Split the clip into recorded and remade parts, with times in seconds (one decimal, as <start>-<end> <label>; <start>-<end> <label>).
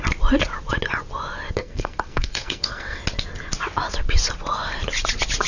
0.0-1.6 recorded; 1.6-3.0 remade; 3.0-5.5 recorded